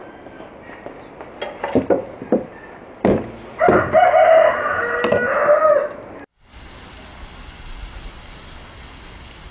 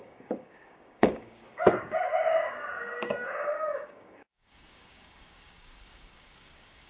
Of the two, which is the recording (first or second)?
first